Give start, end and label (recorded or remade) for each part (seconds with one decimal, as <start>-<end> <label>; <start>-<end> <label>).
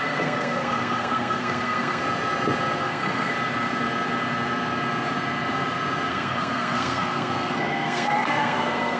0.0-2.0 remade; 2.0-2.8 recorded; 2.8-3.3 remade; 3.3-6.1 recorded; 6.1-9.0 remade